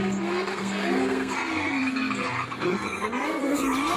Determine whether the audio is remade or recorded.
remade